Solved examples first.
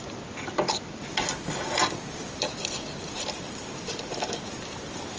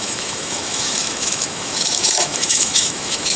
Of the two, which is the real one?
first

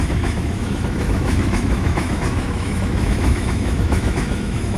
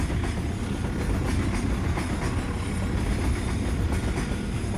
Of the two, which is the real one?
second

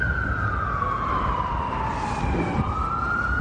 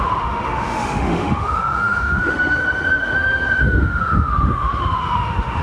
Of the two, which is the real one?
first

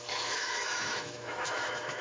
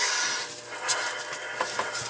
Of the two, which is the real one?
second